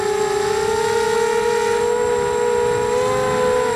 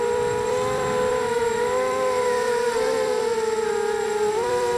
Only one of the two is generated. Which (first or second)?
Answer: second